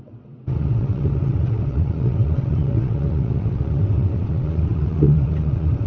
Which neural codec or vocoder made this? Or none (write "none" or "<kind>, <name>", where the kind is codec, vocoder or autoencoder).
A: vocoder, WaveNeXt